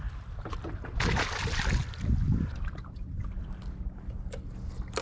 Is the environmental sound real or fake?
real